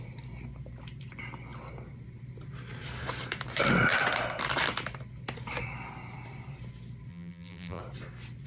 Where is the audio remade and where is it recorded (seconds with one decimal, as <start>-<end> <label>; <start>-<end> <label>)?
0.0-7.1 recorded; 7.1-7.8 remade; 7.8-8.5 recorded